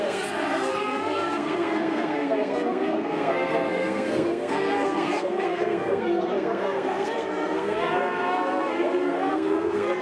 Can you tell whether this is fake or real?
fake